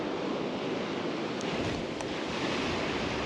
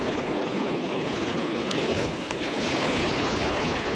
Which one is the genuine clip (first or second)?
first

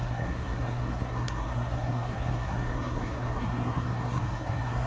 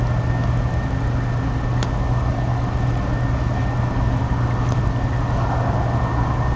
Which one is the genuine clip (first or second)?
second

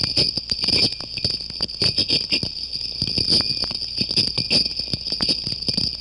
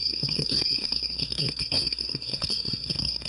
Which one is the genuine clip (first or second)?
first